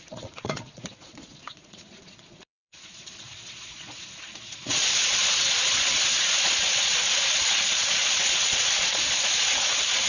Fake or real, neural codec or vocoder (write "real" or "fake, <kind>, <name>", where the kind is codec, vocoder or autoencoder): fake, vocoder, Vocos